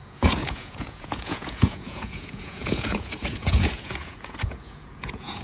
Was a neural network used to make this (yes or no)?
yes